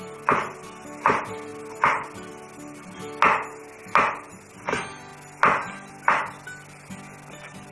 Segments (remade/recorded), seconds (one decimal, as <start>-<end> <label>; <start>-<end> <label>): 0.0-7.7 recorded